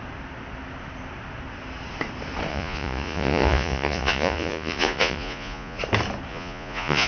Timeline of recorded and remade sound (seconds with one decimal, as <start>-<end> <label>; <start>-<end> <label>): 0.0-2.5 recorded; 2.5-5.8 remade; 5.8-6.3 recorded; 6.3-7.1 remade